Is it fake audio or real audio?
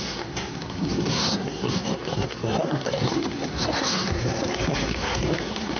fake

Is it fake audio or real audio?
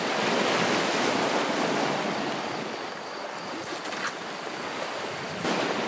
real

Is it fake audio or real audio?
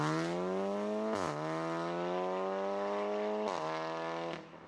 real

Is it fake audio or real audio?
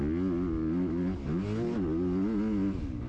real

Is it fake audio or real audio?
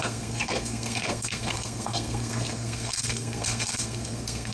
fake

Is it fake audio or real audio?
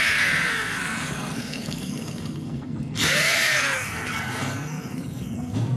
fake